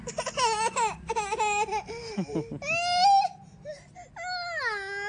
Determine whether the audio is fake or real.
real